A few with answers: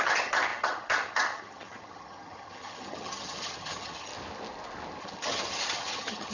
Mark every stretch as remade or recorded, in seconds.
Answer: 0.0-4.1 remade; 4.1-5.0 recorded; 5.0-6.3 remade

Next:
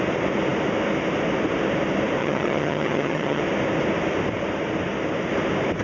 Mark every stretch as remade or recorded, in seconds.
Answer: 0.0-2.2 recorded; 2.2-3.4 remade; 3.4-5.8 recorded

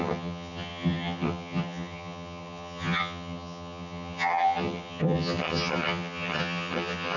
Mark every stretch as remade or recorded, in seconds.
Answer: 0.0-7.2 remade

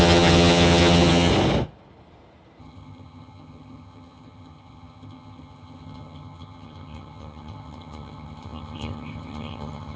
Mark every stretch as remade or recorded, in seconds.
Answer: 0.0-1.3 remade; 1.3-2.6 recorded; 2.6-10.0 remade

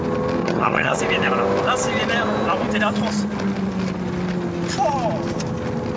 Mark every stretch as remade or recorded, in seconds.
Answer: 0.0-0.4 recorded; 0.4-1.0 remade; 1.0-6.0 recorded

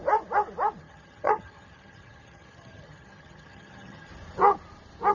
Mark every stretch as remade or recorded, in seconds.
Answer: 0.0-0.8 recorded; 0.8-4.1 remade; 4.1-5.1 recorded